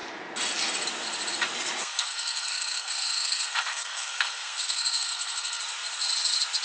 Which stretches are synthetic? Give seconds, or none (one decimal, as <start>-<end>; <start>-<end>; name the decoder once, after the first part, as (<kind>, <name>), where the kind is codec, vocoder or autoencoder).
1.8-5.6 (codec, SNAC)